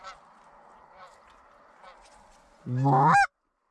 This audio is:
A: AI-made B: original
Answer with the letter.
B